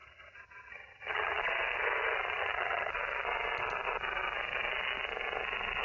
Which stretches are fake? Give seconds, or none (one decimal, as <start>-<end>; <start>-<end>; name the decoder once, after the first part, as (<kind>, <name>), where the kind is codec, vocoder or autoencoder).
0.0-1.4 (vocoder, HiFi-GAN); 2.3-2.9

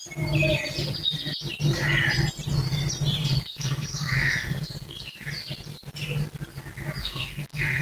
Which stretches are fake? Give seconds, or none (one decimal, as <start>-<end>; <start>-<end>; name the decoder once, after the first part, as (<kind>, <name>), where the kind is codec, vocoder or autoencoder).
3.2-5.3 (codec, SNAC); 7.0-7.8

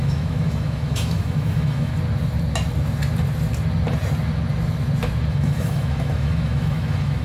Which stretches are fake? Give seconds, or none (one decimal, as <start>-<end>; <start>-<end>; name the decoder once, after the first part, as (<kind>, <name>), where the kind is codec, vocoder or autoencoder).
0.0-1.9 (autoencoder, DAC-VAE); 5.3-7.2

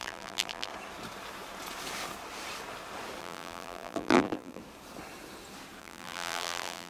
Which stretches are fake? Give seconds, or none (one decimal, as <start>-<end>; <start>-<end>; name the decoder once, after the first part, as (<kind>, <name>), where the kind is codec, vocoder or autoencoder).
0.0-0.7 (vocoder, BigVGAN v2); 3.2-4.6; 5.8-6.9